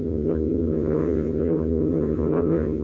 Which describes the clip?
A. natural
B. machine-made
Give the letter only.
B